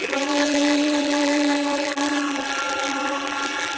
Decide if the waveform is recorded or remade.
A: remade